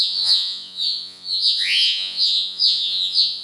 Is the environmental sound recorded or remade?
remade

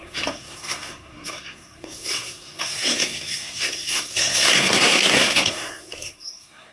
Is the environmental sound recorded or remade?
remade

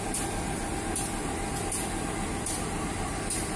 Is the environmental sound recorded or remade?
recorded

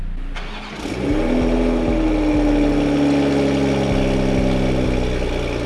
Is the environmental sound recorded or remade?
recorded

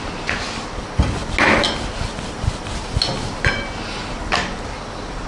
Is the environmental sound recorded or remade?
recorded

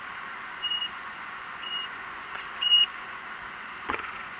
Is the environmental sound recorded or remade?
remade